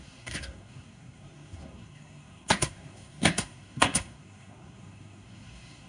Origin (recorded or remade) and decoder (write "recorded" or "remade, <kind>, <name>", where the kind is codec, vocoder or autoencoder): remade, codec, SNAC